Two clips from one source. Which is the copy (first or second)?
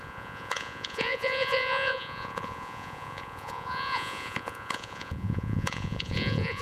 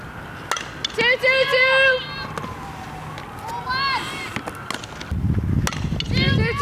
first